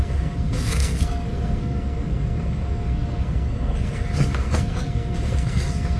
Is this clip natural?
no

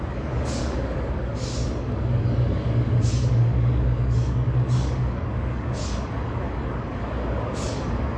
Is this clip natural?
no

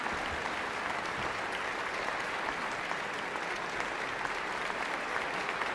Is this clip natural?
yes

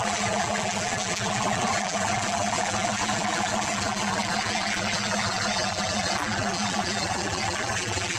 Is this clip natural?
no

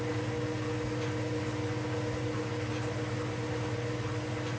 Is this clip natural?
yes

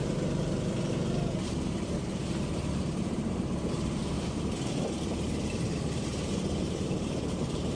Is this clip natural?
no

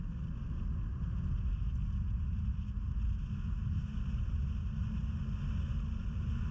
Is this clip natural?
yes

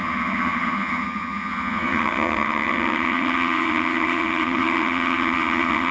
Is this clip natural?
no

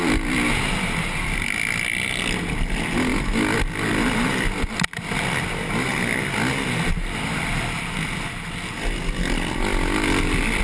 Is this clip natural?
yes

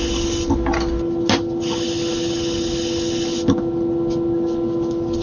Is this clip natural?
yes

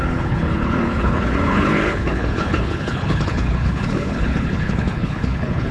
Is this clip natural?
no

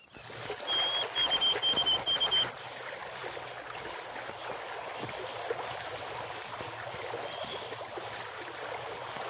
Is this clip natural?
yes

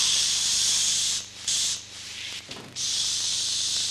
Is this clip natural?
no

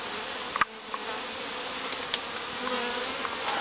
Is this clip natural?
yes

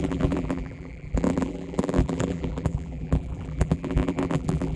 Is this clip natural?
no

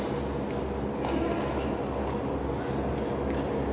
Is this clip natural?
yes